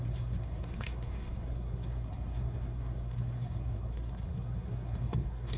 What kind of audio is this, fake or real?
fake